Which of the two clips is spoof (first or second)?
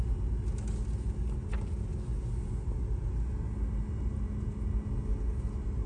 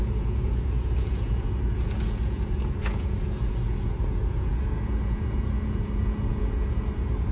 second